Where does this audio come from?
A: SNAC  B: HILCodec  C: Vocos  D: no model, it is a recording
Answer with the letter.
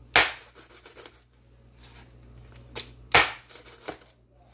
D